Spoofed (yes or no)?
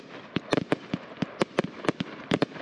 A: no